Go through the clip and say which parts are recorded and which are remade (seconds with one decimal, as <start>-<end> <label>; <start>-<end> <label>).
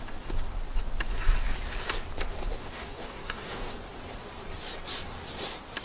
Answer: 0.0-2.6 recorded; 2.6-3.7 remade; 3.7-5.8 recorded